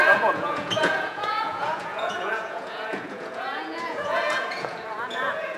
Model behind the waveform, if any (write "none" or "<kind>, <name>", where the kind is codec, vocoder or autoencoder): vocoder, Vocos